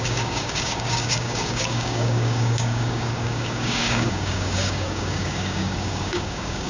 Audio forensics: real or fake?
fake